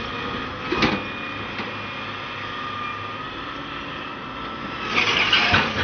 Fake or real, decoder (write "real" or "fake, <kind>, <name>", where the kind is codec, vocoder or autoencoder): real